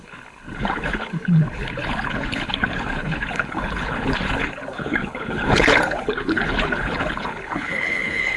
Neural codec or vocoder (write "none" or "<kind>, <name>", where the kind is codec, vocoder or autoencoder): codec, HILCodec